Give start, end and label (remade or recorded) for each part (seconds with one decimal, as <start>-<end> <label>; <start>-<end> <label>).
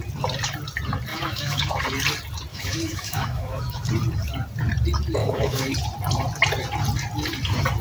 0.0-1.1 recorded; 1.1-1.8 remade; 1.8-2.5 recorded; 2.5-3.9 remade; 3.9-5.2 recorded; 5.2-5.7 remade; 5.7-7.8 recorded